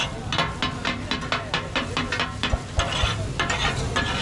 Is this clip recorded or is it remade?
recorded